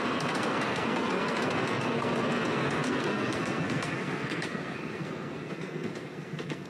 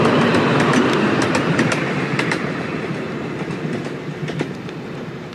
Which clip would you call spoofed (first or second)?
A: first